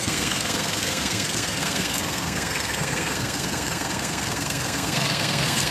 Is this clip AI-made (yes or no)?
yes